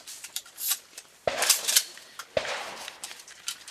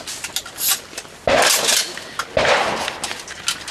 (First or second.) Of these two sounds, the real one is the second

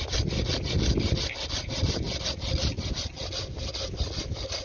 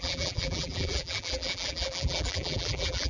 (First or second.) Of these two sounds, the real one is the first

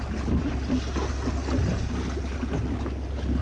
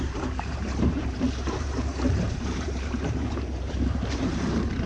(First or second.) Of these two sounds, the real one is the first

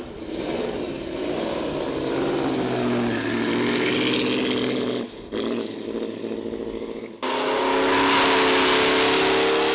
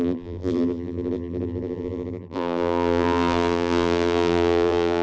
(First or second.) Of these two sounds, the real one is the first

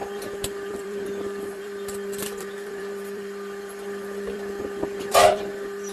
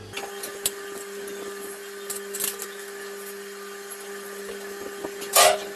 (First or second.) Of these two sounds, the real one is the second